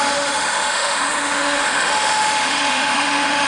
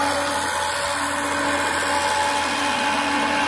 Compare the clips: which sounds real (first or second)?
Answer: second